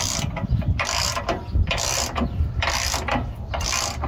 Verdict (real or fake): real